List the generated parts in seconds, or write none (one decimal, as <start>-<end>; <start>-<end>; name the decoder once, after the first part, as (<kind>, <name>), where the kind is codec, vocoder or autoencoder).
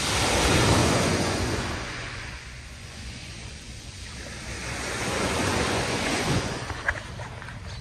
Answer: 0.8-4.0 (vocoder, Vocos); 4.6-6.9